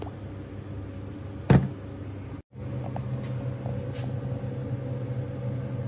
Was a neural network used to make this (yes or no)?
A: no